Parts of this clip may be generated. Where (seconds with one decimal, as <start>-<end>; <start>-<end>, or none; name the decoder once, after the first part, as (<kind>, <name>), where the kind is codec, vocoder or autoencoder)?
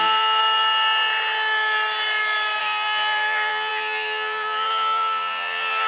0.0-0.4 (vocoder, BigVGAN v2); 2.6-5.9